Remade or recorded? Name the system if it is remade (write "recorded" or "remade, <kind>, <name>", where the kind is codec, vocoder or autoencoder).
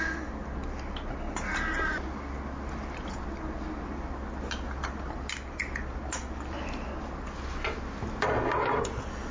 recorded